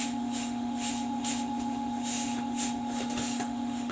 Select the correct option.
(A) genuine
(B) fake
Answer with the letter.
B